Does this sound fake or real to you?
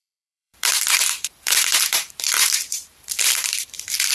fake